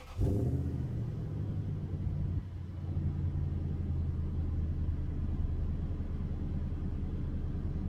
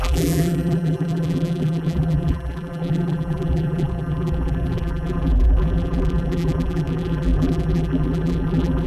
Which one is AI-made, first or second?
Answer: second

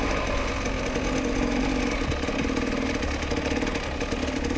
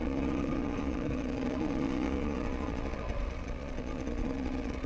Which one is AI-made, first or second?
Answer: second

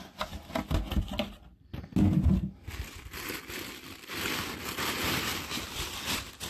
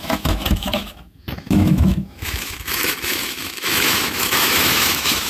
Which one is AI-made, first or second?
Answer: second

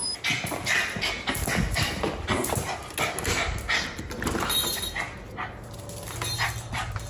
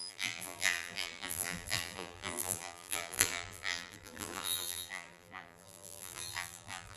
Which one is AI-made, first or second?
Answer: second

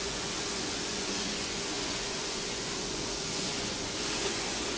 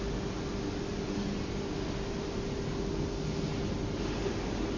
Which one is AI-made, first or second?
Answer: first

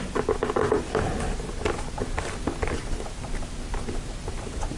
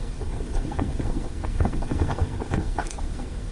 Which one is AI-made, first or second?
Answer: second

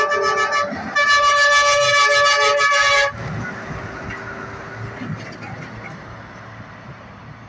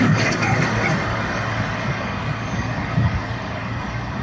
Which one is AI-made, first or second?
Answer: second